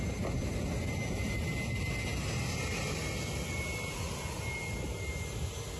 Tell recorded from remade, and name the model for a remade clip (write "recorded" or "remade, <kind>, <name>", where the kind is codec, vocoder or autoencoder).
recorded